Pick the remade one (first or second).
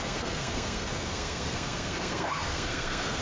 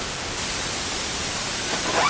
first